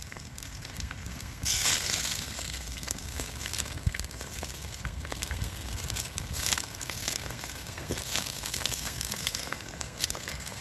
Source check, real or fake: fake